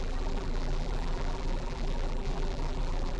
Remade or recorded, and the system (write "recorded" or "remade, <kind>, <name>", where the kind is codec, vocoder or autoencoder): remade, vocoder, BigVGAN v2